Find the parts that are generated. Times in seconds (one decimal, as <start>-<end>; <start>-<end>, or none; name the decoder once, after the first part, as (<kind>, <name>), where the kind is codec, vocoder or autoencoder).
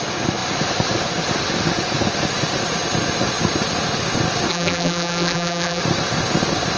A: 4.5-5.8 (vocoder, BigVGAN v2)